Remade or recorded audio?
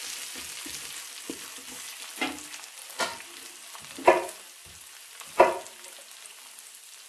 recorded